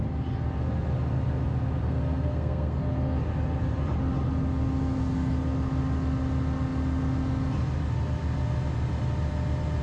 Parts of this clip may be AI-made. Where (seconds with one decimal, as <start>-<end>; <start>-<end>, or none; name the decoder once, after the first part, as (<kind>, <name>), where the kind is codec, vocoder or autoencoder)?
1.8-2.8 (codec, SNAC)

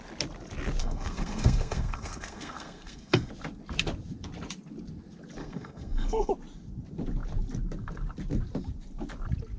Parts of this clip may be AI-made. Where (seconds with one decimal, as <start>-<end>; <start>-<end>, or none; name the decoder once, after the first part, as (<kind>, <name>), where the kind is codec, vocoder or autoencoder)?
0.8-3.3 (codec, SNAC); 5.4-6.3

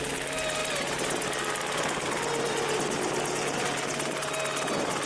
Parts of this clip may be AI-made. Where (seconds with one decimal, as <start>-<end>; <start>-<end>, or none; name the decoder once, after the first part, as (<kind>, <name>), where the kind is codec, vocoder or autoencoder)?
none

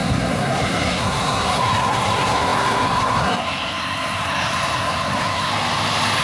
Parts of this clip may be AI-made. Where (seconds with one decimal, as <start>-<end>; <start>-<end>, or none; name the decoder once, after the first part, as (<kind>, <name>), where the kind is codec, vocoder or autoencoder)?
0.0-5.5 (codec, SNAC)

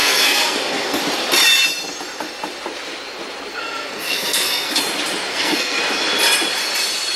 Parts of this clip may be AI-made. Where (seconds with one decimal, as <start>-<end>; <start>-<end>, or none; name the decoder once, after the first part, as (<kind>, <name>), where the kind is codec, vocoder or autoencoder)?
0.0-1.0 (codec, SNAC); 3.5-4.8; 5.3-5.8

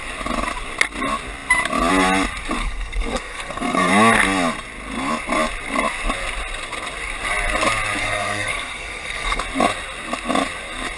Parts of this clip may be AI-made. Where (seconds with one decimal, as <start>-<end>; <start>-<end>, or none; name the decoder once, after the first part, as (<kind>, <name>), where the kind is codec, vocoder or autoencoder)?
2.6-3.9 (codec, SNAC); 8.0-9.4

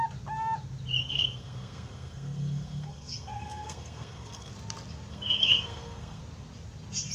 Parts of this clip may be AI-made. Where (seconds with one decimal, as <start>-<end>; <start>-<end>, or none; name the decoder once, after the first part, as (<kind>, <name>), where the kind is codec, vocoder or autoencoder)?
1.0-4.5 (codec, SNAC); 5.1-6.2